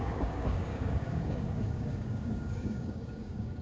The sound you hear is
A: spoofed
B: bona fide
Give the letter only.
A